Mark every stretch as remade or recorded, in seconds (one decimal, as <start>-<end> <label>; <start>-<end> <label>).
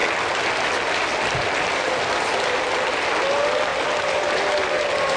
0.0-3.7 recorded; 3.7-4.4 remade; 4.4-5.2 recorded